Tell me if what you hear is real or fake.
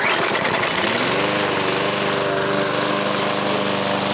real